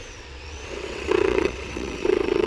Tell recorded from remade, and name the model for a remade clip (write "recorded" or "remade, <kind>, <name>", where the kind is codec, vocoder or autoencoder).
remade, vocoder, WaveNeXt